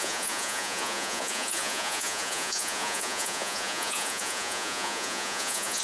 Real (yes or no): no